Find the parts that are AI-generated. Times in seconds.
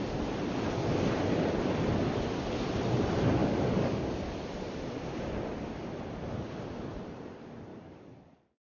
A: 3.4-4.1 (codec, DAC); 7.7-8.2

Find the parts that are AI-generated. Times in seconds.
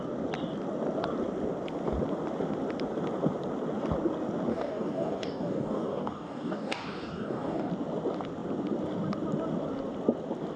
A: 4.5-7.7 (codec, DAC)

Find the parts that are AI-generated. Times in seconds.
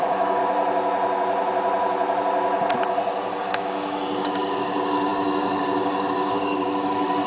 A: 0.0-0.4 (codec, DAC); 3.4-7.3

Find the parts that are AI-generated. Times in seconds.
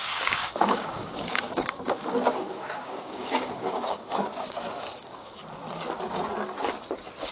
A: 0.0-5.4 (codec, DAC)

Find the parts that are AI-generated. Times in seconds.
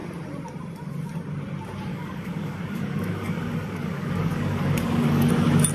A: 1.9-5.3 (codec, DAC)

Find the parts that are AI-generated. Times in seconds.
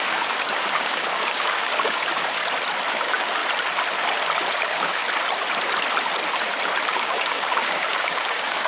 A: 0.0-2.4 (codec, DAC); 2.9-3.4; 4.5-5.0; 6.9-8.7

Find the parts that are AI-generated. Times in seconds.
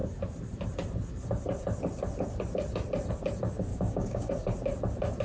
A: 3.7-4.3 (codec, DAC)